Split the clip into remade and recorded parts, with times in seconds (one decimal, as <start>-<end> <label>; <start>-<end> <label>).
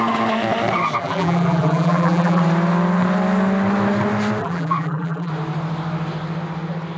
0.0-1.0 recorded; 1.0-2.4 remade; 2.4-4.4 recorded; 4.4-5.3 remade; 5.3-7.0 recorded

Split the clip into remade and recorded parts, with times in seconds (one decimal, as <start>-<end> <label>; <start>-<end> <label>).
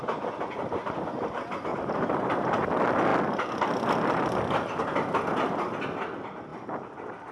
0.0-1.7 recorded; 1.7-2.7 remade; 2.7-7.3 recorded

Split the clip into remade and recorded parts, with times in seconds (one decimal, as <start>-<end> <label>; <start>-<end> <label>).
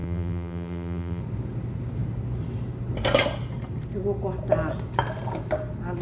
0.0-1.2 remade; 1.2-6.0 recorded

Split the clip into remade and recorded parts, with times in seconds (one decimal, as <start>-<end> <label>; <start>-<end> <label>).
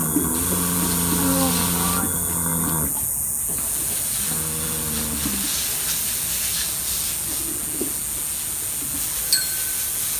0.0-10.2 recorded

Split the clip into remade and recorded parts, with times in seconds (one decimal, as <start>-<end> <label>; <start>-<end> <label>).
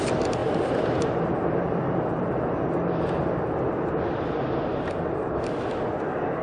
0.0-0.4 recorded; 0.4-4.2 remade; 4.2-6.4 recorded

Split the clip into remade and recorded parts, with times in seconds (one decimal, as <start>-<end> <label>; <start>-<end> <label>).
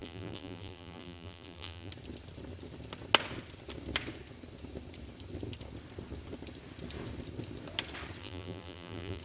0.0-1.9 remade; 1.9-8.2 recorded; 8.2-9.2 remade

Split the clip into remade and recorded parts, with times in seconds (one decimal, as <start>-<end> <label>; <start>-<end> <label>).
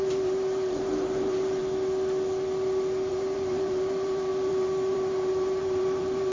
0.0-1.6 remade; 1.6-3.1 recorded; 3.1-6.3 remade